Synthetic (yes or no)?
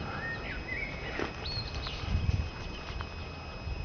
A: no